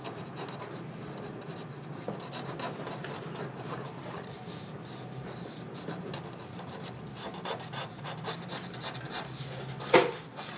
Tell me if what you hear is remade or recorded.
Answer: recorded